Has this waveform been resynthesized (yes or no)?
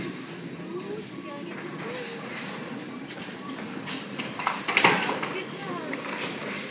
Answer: yes